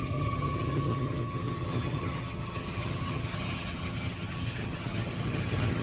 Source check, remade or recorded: remade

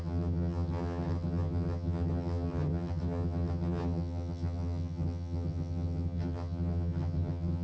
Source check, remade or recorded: remade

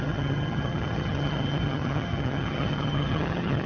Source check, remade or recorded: remade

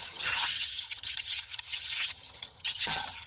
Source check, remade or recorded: remade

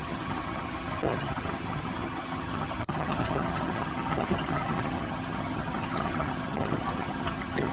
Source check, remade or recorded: remade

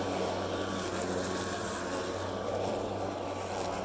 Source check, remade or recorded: recorded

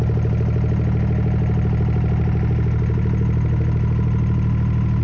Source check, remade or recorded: recorded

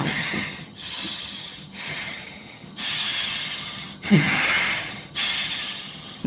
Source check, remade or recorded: remade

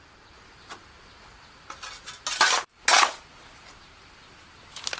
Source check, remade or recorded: recorded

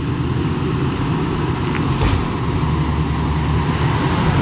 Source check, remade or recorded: recorded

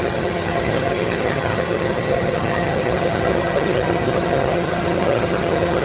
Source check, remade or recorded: remade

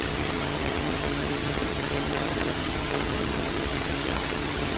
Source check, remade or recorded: remade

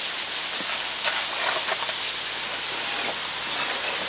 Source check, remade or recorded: recorded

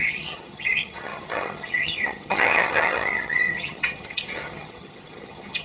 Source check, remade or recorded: remade